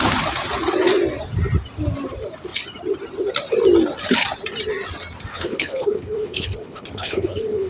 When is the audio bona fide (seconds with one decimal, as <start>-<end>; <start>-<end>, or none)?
0.0-5.3